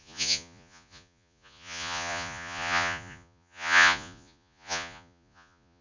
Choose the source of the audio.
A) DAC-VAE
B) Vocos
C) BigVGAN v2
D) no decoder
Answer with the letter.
B